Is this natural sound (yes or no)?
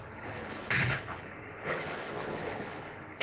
no